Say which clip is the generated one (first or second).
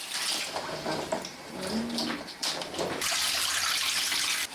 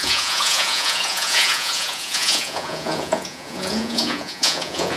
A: second